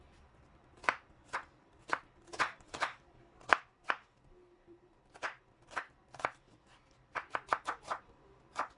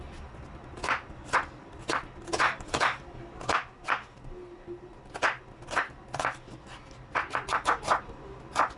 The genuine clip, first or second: second